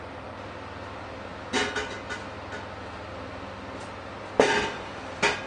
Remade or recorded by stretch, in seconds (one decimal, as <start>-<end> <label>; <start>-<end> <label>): 0.0-5.5 recorded